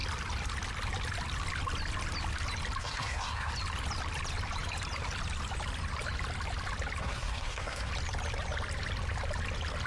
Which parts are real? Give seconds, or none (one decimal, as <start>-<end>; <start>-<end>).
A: 0.0-2.8; 3.5-7.0; 7.9-9.9